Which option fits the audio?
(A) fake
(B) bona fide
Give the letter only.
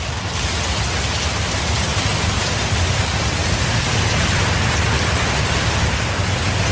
B